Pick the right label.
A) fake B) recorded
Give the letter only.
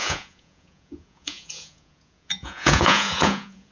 A